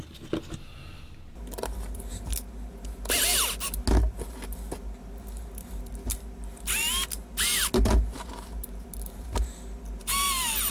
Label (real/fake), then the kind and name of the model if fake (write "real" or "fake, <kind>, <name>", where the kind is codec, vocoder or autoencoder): real